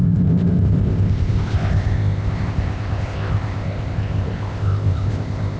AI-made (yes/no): yes